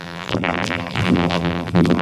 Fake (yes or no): yes